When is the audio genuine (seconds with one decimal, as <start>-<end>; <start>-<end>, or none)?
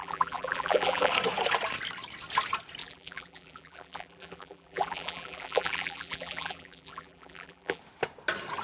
1.1-2.8; 7.8-8.6